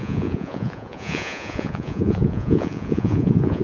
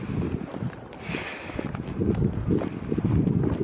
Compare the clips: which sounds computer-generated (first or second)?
first